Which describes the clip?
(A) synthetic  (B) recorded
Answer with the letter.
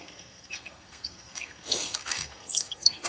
A